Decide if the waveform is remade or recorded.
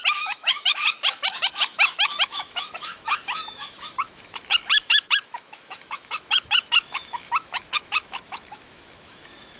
remade